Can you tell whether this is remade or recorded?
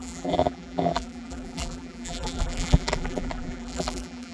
remade